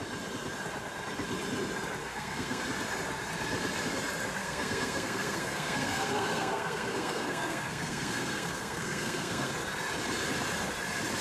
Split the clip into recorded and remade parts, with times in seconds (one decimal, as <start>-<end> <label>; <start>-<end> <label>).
0.0-2.0 recorded; 2.0-2.6 remade; 2.6-4.4 recorded; 4.4-9.5 remade; 9.5-11.2 recorded